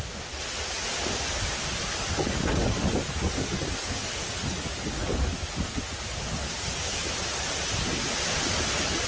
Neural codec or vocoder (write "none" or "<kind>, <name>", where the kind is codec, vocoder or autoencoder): none